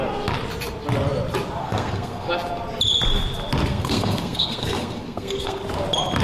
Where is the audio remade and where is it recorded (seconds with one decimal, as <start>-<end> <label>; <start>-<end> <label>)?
0.0-1.6 recorded; 1.6-2.3 remade; 2.3-3.7 recorded; 3.7-5.6 remade; 5.6-6.2 recorded